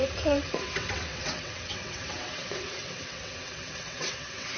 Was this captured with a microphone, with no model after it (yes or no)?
no